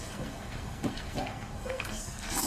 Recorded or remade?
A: remade